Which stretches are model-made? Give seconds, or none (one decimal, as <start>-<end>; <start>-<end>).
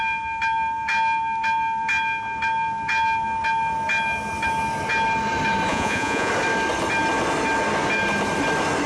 5.7-6.3